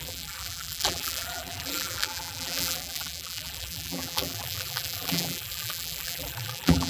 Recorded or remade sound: remade